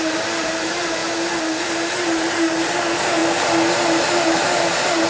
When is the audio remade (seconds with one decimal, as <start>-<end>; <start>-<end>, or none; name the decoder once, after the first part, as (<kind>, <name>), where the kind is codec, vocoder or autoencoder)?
0.0-1.0 (vocoder, BigVGAN v2); 1.6-3.2; 3.7-5.1